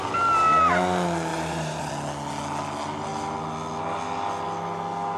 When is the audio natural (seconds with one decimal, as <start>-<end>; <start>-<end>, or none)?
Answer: 0.0-1.3; 1.9-5.2